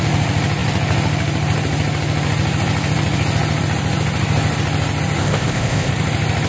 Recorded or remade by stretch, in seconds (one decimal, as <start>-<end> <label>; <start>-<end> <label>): 0.0-5.2 recorded; 5.2-5.9 remade; 5.9-6.5 recorded